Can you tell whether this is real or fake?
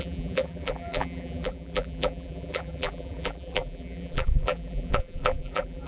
fake